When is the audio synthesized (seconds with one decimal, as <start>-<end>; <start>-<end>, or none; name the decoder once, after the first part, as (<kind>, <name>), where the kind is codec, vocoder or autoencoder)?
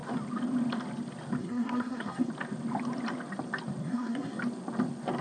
1.4-2.3 (codec, SNAC); 3.8-4.4